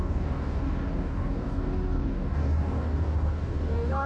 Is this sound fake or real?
fake